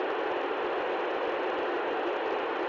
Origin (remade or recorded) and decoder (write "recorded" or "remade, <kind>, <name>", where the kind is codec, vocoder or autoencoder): recorded